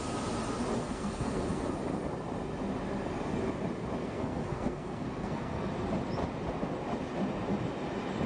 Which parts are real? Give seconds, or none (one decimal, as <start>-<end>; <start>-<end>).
0.0-0.8; 1.7-4.0; 5.7-8.3